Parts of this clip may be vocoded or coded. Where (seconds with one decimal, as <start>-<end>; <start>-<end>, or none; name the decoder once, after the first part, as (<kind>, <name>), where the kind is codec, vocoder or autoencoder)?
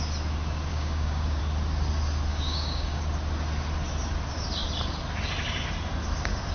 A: 0.7-1.4 (codec, DAC); 2.3-3.0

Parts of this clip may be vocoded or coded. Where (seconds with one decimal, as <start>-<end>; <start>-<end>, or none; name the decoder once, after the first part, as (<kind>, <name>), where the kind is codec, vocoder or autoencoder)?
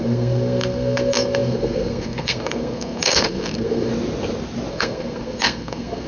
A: 0.0-3.9 (codec, SNAC); 4.7-6.1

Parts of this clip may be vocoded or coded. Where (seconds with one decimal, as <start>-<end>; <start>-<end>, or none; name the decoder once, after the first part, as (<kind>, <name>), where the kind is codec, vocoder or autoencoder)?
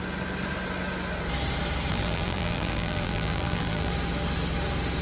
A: 1.9-3.9 (vocoder, BigVGAN v2)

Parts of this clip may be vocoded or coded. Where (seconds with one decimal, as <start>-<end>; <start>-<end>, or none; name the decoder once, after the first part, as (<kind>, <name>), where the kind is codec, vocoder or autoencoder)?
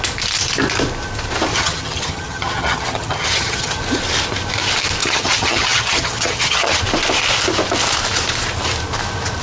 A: 1.5-3.8 (vocoder, HiFi-GAN); 5.0-6.8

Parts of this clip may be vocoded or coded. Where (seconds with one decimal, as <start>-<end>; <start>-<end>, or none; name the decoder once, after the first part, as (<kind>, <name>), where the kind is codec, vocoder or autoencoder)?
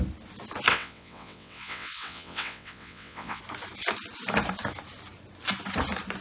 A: 0.7-3.4 (vocoder, WaveNeXt)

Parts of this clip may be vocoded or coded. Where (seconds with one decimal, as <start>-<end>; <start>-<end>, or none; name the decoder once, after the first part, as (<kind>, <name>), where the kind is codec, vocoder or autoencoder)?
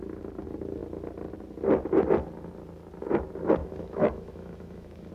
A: 3.6-5.1 (autoencoder, DAC-VAE)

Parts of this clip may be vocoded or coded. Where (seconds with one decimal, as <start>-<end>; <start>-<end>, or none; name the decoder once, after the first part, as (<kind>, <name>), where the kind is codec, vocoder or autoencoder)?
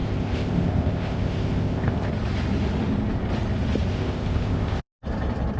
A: 0.0-2.1 (codec, ZipCodec); 3.9-4.8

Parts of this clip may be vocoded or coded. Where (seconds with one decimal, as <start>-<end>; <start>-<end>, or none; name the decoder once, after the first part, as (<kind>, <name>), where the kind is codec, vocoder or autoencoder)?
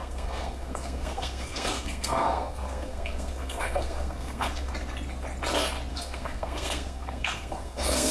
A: 0.0-4.7 (codec, SNAC); 5.9-8.1